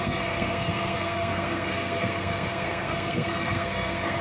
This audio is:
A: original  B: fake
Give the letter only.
B